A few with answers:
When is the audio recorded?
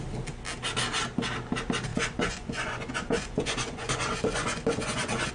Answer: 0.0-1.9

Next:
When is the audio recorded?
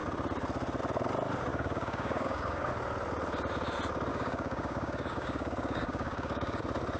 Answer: 0.0-1.5; 2.7-4.1; 6.6-7.0